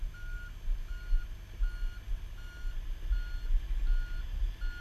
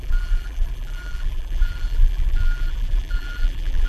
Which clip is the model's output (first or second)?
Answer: second